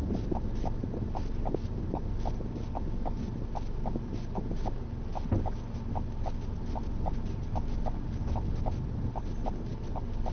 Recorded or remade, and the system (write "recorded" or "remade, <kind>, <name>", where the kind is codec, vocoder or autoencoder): recorded